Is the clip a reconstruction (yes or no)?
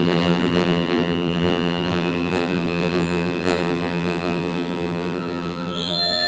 yes